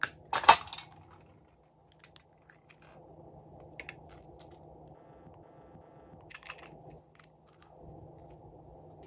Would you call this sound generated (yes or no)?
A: no